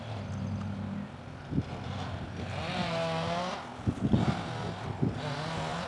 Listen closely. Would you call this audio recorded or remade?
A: recorded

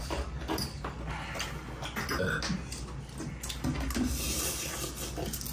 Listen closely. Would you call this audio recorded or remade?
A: recorded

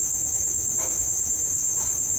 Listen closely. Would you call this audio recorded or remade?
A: remade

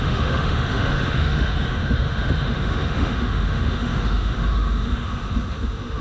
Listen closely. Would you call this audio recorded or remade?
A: remade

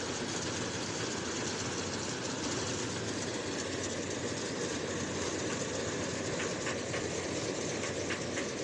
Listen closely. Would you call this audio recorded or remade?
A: recorded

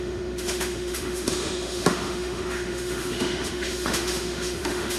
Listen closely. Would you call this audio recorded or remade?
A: remade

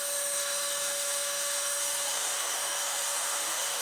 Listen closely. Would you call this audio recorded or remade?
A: remade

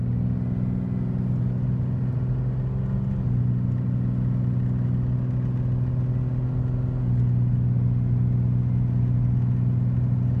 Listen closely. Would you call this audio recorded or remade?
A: recorded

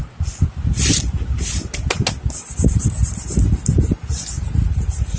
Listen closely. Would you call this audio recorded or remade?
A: recorded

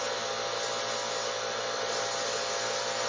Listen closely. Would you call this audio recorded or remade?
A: recorded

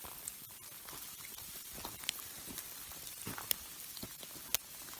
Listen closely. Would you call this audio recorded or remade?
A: recorded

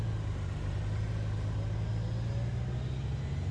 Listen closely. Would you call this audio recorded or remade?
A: recorded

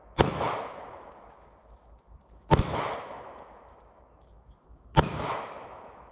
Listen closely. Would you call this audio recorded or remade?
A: remade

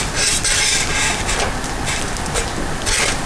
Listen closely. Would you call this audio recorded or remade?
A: recorded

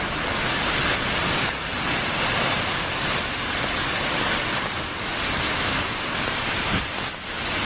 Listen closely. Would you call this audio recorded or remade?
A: recorded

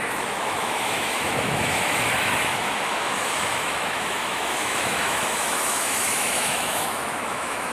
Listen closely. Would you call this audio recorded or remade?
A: remade